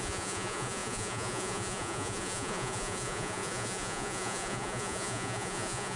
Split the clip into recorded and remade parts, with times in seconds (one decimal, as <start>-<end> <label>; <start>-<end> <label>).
0.0-6.0 remade